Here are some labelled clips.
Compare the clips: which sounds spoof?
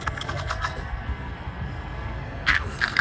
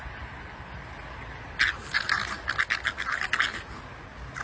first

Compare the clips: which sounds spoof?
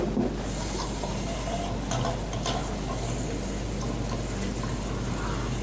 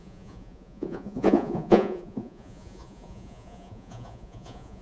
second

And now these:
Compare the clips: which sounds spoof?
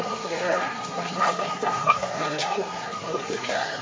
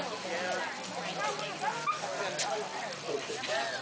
first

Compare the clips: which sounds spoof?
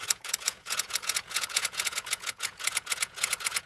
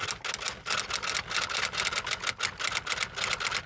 first